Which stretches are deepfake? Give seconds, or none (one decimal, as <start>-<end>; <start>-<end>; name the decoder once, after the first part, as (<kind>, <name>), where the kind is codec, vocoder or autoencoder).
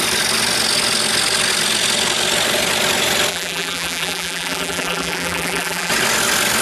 3.3-5.9 (vocoder, BigVGAN v2)